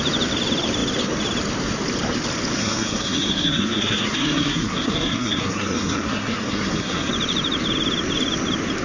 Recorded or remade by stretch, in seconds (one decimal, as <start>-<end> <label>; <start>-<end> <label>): 0.0-2.6 recorded; 2.6-7.1 remade; 7.1-8.8 recorded